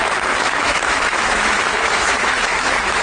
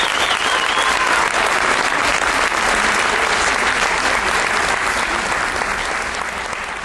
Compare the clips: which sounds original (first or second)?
second